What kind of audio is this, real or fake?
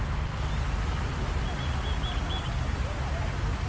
real